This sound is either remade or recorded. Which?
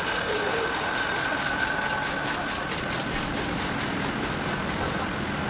recorded